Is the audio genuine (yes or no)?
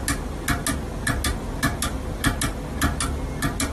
yes